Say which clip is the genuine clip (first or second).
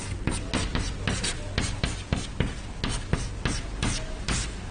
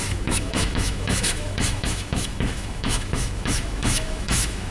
first